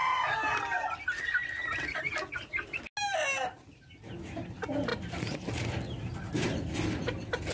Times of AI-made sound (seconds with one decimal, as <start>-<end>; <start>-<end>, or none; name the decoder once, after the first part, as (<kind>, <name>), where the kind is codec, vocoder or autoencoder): none